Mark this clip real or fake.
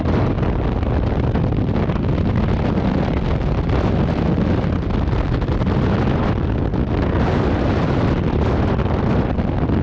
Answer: real